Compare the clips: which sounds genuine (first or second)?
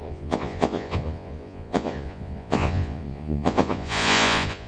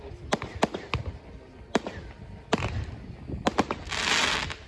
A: second